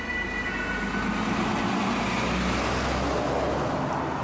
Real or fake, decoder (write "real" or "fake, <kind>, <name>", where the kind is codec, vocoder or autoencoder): real